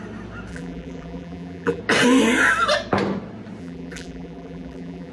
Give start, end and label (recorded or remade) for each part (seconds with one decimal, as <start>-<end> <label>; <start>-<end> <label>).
0.0-0.5 recorded; 0.5-1.8 remade; 1.8-3.6 recorded; 3.6-5.1 remade